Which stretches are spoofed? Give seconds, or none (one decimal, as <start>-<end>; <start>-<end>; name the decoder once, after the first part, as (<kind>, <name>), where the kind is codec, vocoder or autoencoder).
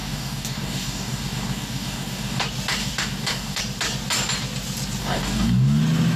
0.0-2.4 (codec, DAC); 2.8-3.6; 5.0-5.8